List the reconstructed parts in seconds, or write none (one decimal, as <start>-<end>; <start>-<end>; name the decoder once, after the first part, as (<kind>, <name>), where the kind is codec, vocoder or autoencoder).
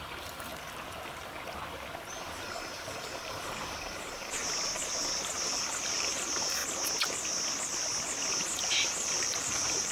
0.0-0.5 (vocoder, BigVGAN v2); 2.1-4.4; 5.4-6.6; 8.3-9.9